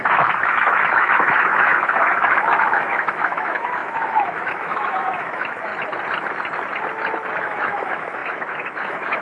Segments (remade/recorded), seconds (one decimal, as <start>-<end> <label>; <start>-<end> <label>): 0.0-5.7 remade; 5.7-7.4 recorded; 7.4-9.2 remade